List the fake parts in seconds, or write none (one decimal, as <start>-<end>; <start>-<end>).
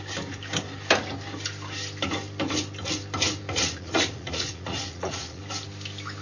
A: 3.6-5.4